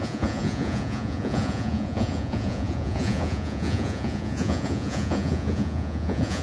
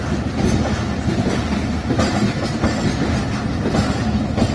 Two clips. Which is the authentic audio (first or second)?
second